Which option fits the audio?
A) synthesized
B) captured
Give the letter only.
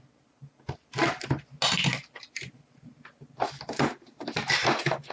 B